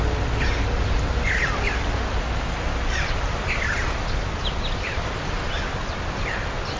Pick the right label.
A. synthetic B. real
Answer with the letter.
B